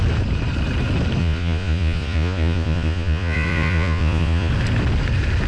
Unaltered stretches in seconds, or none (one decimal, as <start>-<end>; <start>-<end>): 0.0-1.2; 4.5-5.5